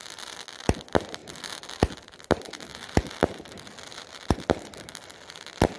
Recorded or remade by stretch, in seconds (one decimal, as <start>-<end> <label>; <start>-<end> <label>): 0.0-5.8 recorded